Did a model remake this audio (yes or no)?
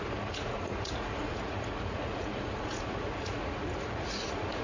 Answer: yes